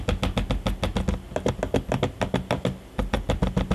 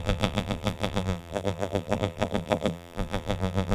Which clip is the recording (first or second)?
first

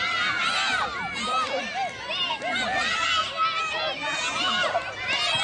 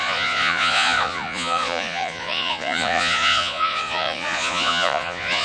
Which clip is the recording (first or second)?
first